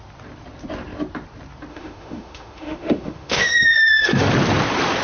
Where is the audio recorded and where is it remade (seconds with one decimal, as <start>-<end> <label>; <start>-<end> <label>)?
0.0-1.7 recorded; 1.7-4.3 remade; 4.3-5.0 recorded